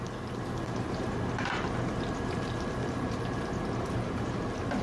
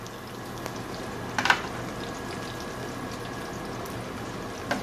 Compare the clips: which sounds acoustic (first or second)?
second